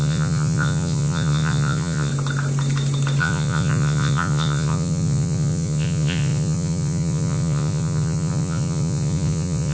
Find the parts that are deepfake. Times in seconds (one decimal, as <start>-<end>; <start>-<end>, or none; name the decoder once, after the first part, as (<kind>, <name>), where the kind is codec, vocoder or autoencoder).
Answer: 0.0-2.1 (vocoder, Vocos); 3.2-9.7